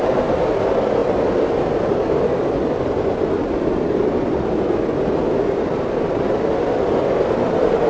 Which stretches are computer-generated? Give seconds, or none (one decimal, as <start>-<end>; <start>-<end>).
none